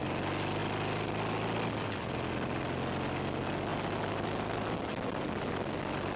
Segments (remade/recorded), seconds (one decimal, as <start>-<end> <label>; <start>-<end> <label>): 0.0-6.2 recorded